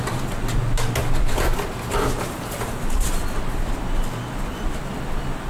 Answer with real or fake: real